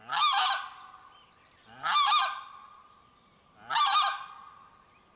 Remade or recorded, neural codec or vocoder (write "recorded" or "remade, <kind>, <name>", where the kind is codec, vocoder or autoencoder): recorded